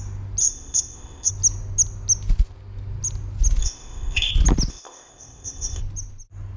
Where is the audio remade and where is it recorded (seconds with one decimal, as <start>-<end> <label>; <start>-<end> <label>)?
0.0-0.4 recorded; 0.4-1.3 remade; 1.3-3.6 recorded; 3.6-4.3 remade; 4.3-4.7 recorded; 4.7-5.8 remade; 5.8-6.6 recorded